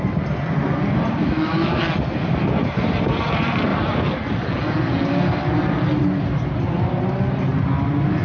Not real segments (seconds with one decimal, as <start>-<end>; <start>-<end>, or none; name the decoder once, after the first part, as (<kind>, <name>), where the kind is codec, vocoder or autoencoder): 1.2-1.8 (autoencoder, DAC-VAE)